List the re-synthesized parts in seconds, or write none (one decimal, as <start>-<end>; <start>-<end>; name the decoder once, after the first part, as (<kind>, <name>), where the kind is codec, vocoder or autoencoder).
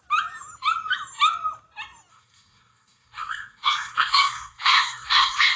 2.1-5.6 (codec, SNAC)